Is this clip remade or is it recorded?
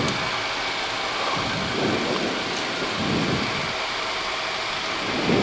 recorded